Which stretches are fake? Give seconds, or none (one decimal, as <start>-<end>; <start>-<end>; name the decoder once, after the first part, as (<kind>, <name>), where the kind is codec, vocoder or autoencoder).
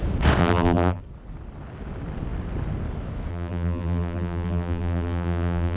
0.4-1.0 (vocoder, BigVGAN v2); 3.3-5.8